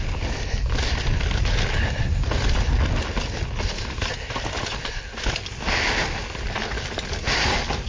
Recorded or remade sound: recorded